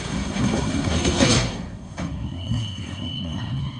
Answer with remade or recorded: remade